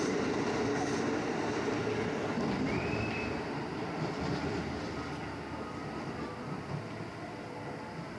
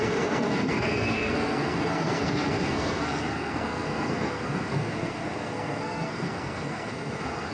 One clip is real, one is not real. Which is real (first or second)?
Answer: first